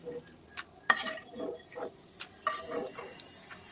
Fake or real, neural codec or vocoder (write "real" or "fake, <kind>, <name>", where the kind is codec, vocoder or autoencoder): real